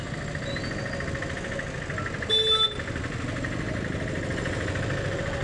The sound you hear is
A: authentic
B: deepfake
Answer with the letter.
A